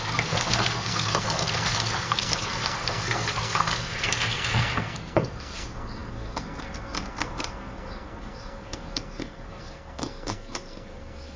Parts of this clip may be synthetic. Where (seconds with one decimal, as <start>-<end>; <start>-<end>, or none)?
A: 0.0-11.4